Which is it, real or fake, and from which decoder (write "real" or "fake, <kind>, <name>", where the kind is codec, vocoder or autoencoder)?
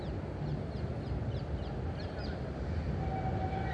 real